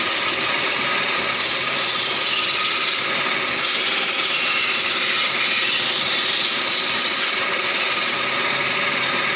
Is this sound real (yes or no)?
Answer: yes